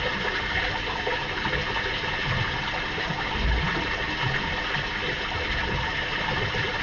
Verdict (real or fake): real